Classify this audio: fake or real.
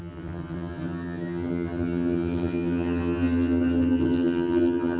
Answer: fake